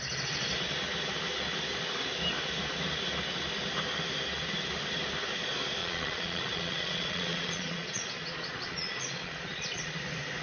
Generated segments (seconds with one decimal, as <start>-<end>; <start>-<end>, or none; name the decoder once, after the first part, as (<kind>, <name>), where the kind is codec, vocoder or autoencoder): 5.8-10.0 (vocoder, Vocos)